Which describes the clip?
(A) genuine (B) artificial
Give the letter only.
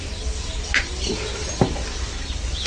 A